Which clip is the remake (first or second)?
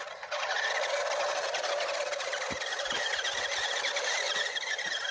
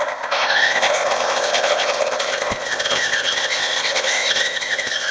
second